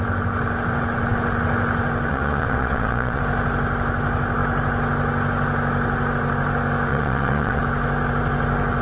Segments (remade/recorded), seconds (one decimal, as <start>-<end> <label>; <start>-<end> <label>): 0.0-2.1 recorded; 2.1-3.2 remade; 3.2-6.9 recorded; 6.9-7.6 remade; 7.6-8.8 recorded